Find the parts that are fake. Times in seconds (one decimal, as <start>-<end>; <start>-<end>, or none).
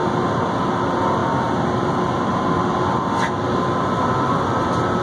none